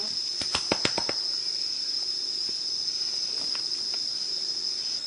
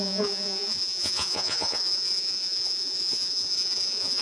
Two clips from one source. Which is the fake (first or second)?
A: second